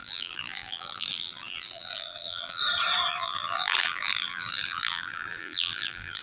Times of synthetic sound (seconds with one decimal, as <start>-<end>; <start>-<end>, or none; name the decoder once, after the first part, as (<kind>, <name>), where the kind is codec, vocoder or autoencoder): 0.0-2.6 (vocoder, BigVGAN v2); 3.1-6.2